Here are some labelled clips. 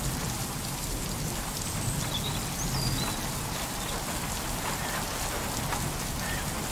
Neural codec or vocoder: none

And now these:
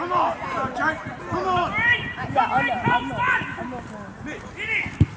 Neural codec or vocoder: none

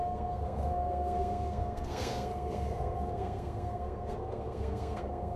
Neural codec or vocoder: codec, SNAC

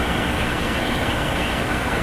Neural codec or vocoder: codec, SNAC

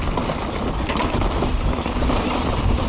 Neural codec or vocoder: none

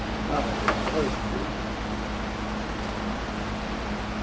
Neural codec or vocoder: none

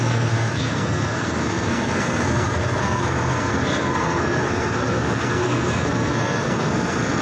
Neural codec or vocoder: codec, SNAC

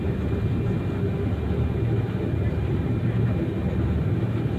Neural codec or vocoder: none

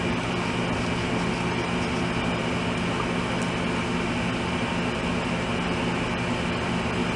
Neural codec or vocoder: none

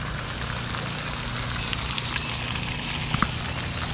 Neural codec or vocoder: none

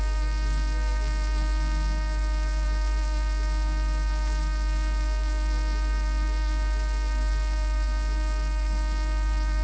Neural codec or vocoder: codec, SNAC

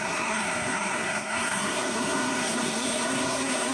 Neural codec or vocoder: codec, SNAC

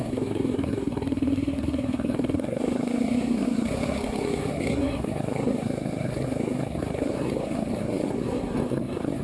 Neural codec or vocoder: codec, SNAC